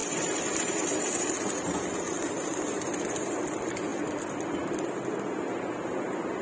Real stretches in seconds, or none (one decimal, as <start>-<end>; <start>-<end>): 3.3-6.4